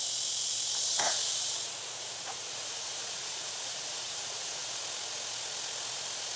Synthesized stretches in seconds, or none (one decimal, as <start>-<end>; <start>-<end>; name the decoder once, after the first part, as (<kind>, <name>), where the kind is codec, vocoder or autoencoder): 0.9-4.7 (vocoder, Vocos)